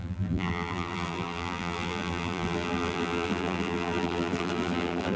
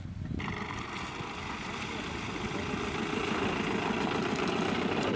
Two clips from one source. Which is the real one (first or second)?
second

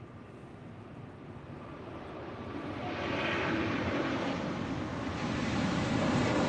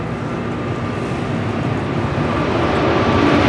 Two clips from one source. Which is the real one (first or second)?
second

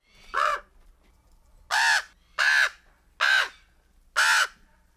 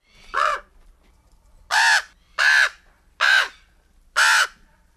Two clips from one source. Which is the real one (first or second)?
first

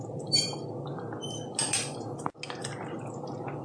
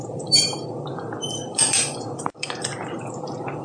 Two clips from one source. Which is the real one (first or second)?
first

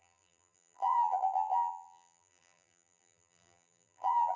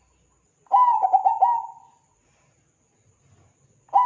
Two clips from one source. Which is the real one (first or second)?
second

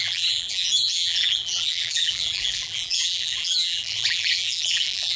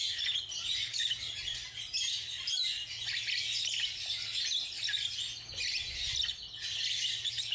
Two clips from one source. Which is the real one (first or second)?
second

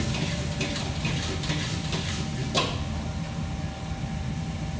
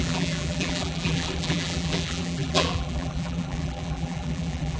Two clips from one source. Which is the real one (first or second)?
first